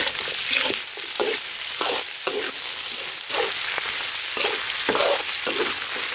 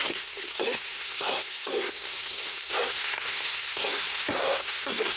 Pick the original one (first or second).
first